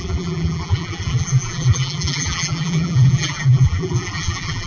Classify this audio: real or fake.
fake